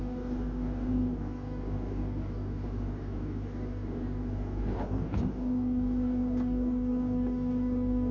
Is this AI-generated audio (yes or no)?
yes